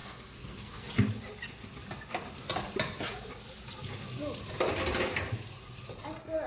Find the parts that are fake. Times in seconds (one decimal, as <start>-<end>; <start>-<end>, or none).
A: 0.0-0.9